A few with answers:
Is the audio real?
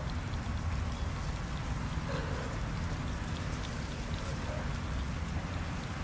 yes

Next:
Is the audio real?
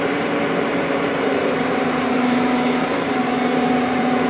no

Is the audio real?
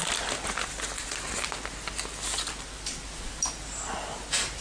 yes